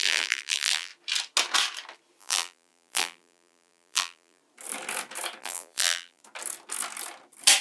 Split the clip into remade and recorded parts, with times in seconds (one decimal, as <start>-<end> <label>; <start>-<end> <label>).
0.0-0.9 remade; 0.9-2.2 recorded; 2.2-4.4 remade; 4.4-5.4 recorded; 5.4-6.2 remade; 6.2-7.6 recorded